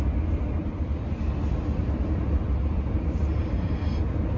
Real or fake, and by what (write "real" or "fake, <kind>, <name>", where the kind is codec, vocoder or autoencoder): real